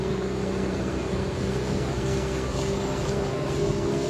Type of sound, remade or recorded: remade